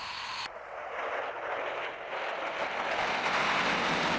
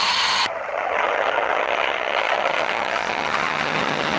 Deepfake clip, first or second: second